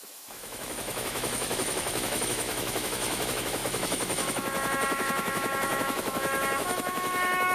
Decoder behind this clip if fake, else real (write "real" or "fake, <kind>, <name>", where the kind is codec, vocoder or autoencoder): fake, autoencoder, DAC-VAE